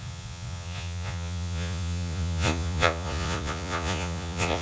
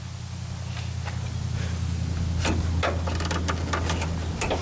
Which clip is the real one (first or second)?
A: second